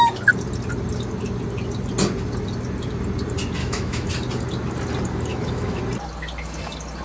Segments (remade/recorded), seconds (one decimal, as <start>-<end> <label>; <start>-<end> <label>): 0.0-3.6 recorded; 3.6-4.1 remade; 4.1-5.3 recorded; 5.3-5.8 remade; 5.8-7.0 recorded